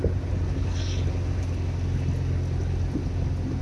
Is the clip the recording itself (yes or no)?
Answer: yes